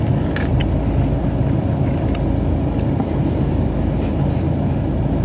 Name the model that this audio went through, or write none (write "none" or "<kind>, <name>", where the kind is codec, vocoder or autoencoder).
none